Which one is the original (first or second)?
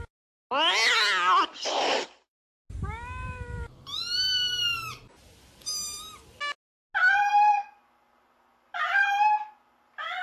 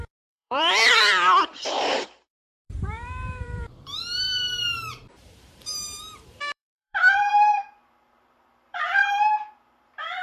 first